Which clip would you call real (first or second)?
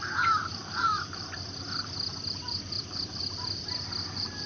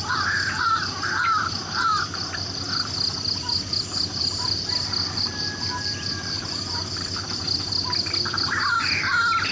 second